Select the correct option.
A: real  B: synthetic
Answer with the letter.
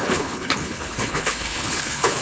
B